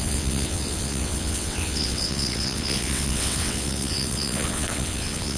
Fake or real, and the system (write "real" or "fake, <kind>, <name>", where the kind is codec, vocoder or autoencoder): fake, vocoder, WaveNeXt